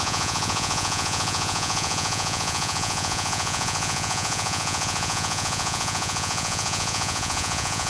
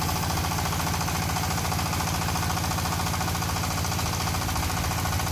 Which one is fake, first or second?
first